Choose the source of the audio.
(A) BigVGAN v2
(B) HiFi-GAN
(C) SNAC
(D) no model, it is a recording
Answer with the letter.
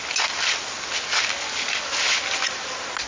D